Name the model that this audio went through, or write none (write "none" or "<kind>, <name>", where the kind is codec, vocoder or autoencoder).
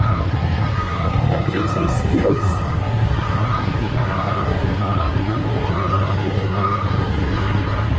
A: codec, SNAC